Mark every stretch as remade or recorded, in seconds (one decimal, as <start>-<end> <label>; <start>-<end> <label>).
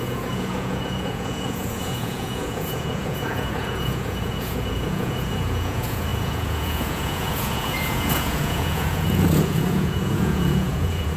0.0-11.2 remade